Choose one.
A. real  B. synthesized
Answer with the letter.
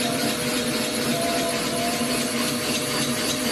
B